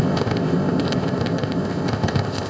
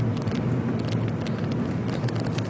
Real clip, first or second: second